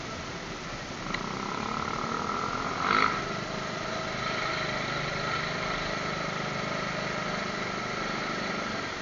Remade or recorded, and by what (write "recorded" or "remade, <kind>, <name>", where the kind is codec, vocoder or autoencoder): recorded